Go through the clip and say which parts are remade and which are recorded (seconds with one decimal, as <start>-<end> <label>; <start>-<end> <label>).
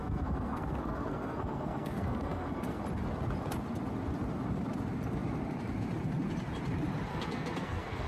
0.0-2.8 remade; 2.8-7.1 recorded; 7.1-8.1 remade